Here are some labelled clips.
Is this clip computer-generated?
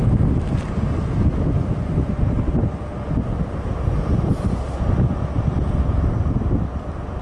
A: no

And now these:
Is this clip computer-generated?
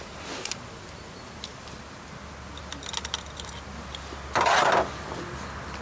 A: no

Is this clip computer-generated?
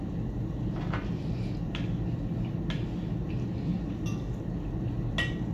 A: no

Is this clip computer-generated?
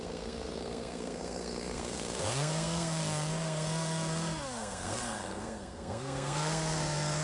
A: yes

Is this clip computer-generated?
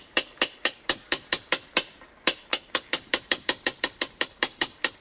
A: yes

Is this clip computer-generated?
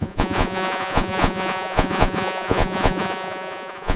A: yes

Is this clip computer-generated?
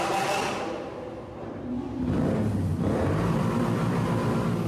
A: no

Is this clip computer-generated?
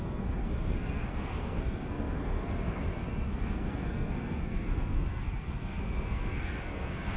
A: yes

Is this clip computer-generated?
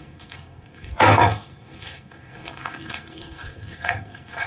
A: yes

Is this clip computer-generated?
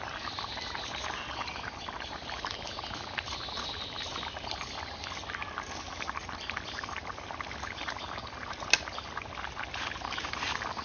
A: no